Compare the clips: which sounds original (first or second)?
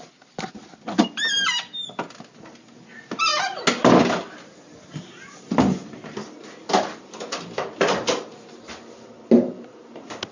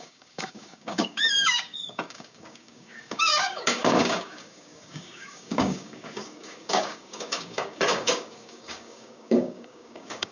first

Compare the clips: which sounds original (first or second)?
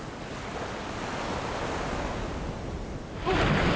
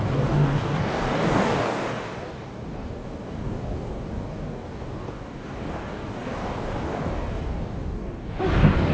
first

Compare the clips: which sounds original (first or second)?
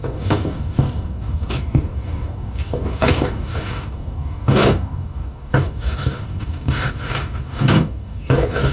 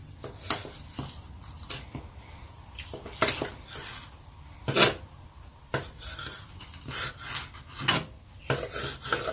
second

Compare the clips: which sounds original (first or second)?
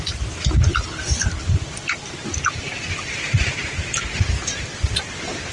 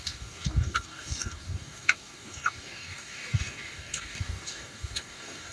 first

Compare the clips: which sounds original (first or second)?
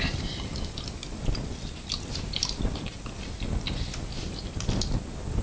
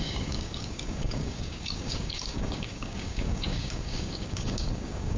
first